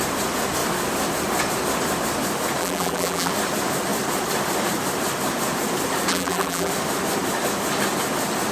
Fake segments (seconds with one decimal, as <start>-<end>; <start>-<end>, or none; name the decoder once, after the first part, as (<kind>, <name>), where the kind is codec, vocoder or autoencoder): 2.6-3.3 (vocoder, BigVGAN v2); 6.1-6.7